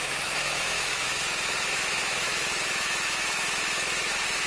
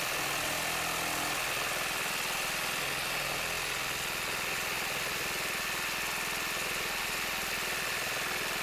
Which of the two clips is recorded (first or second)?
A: second